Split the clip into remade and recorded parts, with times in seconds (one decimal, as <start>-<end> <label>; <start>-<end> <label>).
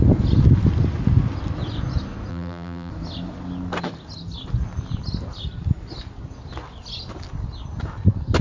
0.0-2.3 recorded; 2.3-2.9 remade; 2.9-8.4 recorded